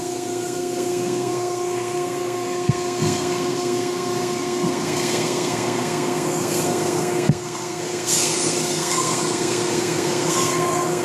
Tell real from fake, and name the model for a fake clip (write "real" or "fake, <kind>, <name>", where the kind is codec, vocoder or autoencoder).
fake, codec, SNAC